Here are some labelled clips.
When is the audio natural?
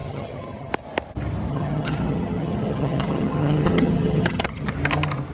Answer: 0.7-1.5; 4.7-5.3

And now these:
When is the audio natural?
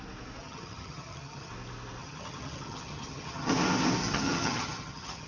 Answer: 0.0-0.4; 1.5-2.0; 3.5-4.0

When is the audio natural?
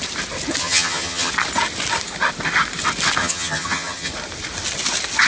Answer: 0.0-0.6; 1.3-3.2; 4.1-5.3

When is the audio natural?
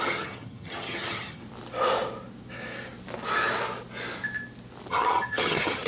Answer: 1.4-4.9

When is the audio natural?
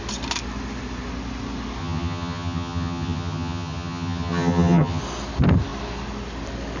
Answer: 0.0-1.8; 5.0-6.8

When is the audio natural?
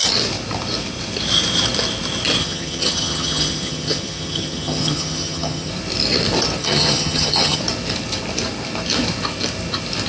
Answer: 0.0-2.4; 5.7-6.6; 7.6-10.1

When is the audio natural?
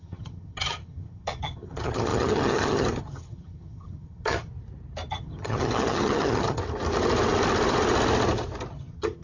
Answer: 4.5-5.1; 6.6-8.7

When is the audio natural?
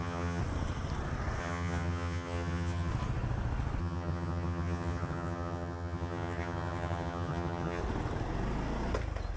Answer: 0.4-1.4; 2.9-3.8; 7.8-9.4